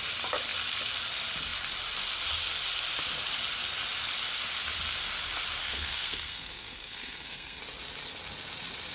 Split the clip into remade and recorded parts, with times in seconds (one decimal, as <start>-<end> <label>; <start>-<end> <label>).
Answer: 0.0-5.6 recorded; 5.6-7.6 remade; 7.6-8.9 recorded

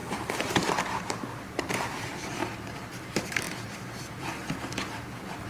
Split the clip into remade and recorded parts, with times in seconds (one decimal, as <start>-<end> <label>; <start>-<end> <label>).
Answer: 0.0-2.4 remade; 2.4-3.0 recorded; 3.0-4.3 remade; 4.3-5.5 recorded

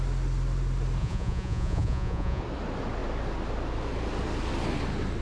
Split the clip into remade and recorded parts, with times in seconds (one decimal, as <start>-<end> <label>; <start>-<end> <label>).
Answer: 0.0-1.0 recorded; 1.0-2.4 remade; 2.4-5.2 recorded

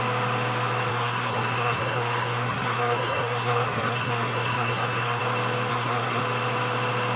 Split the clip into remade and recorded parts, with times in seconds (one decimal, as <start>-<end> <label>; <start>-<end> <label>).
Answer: 0.0-0.9 recorded; 0.9-5.2 remade; 5.2-5.7 recorded; 5.7-6.2 remade; 6.2-7.2 recorded

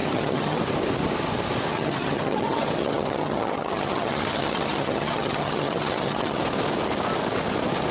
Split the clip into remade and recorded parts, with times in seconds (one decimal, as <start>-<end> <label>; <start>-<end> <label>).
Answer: 0.0-0.6 remade; 0.6-1.7 recorded; 1.7-6.4 remade; 6.4-7.9 recorded

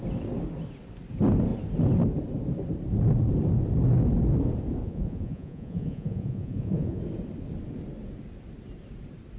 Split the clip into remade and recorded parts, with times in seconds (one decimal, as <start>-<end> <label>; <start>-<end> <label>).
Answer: 0.0-4.8 recorded; 4.8-7.0 remade; 7.0-9.4 recorded